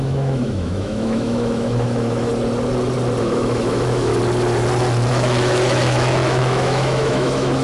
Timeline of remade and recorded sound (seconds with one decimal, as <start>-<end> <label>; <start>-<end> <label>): 0.0-2.3 remade; 2.3-3.2 recorded; 3.2-4.1 remade; 4.1-5.1 recorded; 5.1-7.6 remade